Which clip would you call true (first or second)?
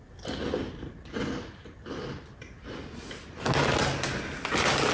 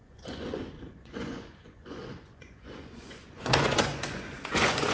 first